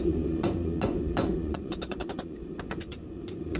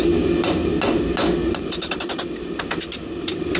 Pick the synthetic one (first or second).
first